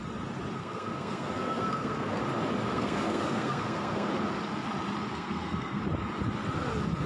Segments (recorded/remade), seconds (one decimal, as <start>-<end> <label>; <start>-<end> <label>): 0.0-0.6 recorded; 0.6-2.2 remade; 2.2-2.7 recorded; 2.7-4.1 remade; 4.1-5.1 recorded; 5.1-5.8 remade; 5.8-7.1 recorded